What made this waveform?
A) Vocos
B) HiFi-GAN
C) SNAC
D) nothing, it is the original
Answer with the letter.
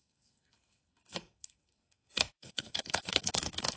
C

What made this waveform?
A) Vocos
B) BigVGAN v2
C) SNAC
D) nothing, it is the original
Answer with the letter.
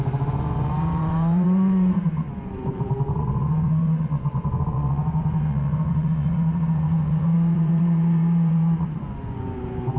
A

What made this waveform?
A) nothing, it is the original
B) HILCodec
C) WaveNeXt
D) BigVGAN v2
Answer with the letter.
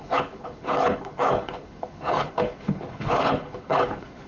B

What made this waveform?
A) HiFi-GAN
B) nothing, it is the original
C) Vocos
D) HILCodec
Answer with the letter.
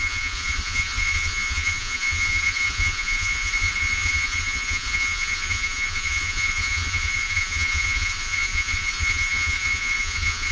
C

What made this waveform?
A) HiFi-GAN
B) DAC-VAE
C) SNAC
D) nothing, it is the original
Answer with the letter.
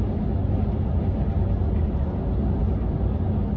D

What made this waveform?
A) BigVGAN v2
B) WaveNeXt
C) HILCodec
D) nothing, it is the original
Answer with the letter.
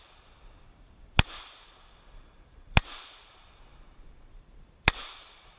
A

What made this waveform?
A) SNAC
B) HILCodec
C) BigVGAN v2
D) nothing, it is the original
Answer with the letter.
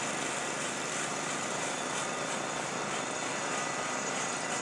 D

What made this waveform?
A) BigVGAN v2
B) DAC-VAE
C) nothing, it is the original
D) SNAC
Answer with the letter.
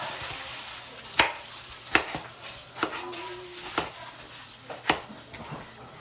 C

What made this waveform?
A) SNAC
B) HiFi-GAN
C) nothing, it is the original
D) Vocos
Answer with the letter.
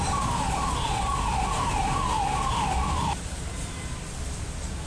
C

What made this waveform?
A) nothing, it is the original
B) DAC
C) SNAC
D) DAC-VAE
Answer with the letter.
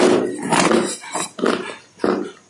A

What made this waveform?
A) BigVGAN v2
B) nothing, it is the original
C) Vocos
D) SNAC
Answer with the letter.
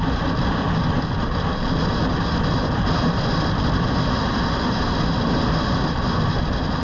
B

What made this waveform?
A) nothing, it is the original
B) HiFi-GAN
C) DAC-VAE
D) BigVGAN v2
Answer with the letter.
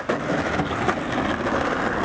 A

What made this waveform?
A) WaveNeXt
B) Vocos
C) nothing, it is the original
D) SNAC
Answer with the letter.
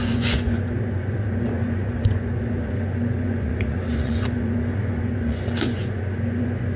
B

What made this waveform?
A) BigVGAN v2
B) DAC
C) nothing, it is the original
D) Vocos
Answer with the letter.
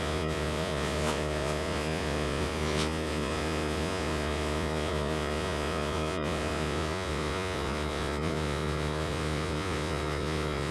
D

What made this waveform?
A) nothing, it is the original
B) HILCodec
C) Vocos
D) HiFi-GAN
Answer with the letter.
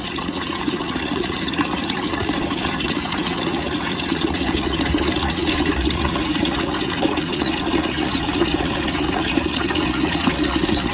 C